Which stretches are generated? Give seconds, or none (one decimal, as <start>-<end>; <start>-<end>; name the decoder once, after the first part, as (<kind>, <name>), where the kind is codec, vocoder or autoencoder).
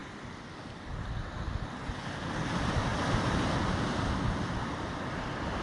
none